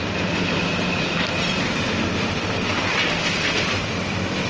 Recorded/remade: remade